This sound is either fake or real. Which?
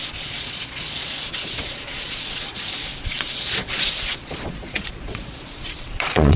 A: fake